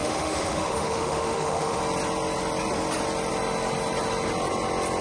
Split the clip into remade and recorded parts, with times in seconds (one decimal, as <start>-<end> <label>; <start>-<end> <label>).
0.0-1.8 remade; 1.8-5.0 recorded